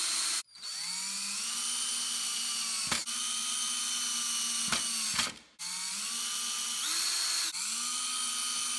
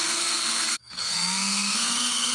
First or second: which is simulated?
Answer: second